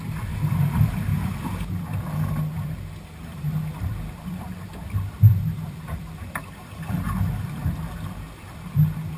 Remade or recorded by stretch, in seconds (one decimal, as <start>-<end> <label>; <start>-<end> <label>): 0.0-9.2 recorded